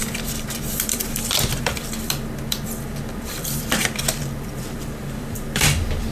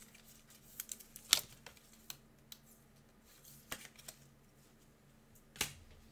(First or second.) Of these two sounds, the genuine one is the second